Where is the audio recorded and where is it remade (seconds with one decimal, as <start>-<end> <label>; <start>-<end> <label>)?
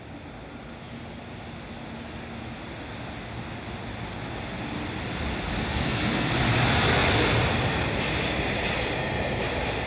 0.0-5.6 recorded; 5.6-6.3 remade; 6.3-9.9 recorded